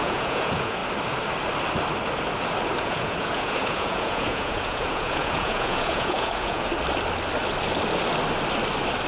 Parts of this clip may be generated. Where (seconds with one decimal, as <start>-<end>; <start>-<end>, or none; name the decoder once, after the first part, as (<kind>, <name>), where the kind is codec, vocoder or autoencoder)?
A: 0.0-0.8 (vocoder, Vocos); 2.8-6.7